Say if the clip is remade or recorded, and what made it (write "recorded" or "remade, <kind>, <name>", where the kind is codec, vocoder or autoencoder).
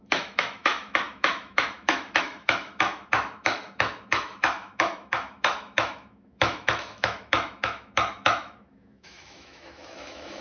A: remade, autoencoder, DAC-VAE